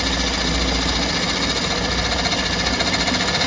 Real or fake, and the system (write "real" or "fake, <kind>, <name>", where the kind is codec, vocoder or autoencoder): real